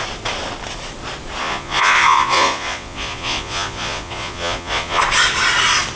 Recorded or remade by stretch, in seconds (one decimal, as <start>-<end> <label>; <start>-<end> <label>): 0.0-1.4 recorded; 1.4-5.0 remade; 5.0-6.0 recorded